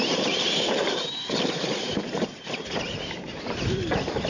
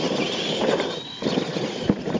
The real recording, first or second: second